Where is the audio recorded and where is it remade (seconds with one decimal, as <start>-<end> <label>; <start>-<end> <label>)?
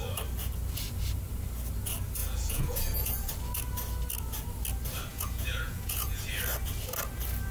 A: 0.0-2.2 recorded; 2.2-3.3 remade; 3.3-5.1 recorded; 5.1-6.2 remade; 6.2-7.5 recorded